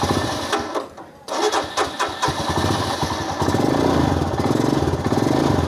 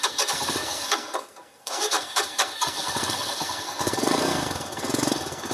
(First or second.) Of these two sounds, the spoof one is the second